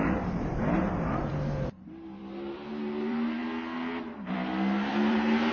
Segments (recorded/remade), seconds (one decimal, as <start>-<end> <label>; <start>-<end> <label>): 0.0-3.4 remade; 3.4-4.9 recorded; 4.9-5.5 remade